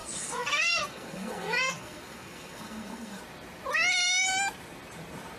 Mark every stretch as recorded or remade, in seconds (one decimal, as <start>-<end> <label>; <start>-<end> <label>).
0.0-3.2 remade; 3.2-5.4 recorded